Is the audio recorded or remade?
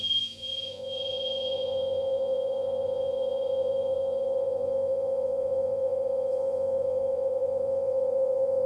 remade